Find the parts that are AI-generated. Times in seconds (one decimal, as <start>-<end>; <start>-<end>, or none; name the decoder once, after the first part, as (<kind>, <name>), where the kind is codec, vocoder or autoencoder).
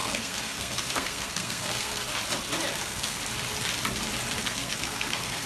0.0-2.1 (codec, SNAC); 2.7-3.2; 4.4-5.5